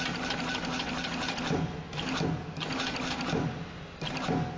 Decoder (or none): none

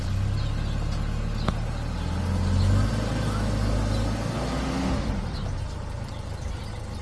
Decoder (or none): none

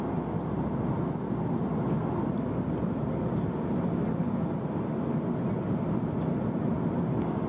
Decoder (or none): none